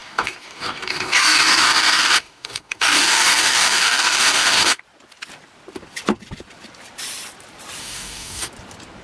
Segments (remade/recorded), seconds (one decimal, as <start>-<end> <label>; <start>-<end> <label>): 0.0-4.8 remade; 4.8-7.8 recorded; 7.8-8.5 remade; 8.5-9.0 recorded